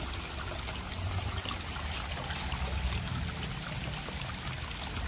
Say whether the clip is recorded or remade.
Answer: recorded